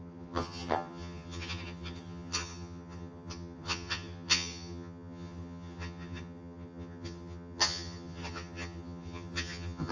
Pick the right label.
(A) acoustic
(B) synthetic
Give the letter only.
B